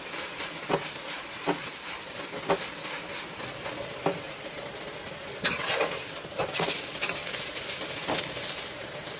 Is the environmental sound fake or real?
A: real